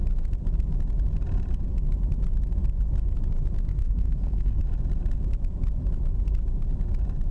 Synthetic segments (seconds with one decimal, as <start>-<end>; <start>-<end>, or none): 3.7-4.6